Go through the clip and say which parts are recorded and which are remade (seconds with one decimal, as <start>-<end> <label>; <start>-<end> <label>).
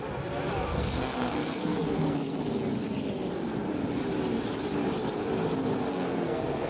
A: 0.0-0.7 recorded; 0.7-2.4 remade; 2.4-5.9 recorded; 5.9-6.7 remade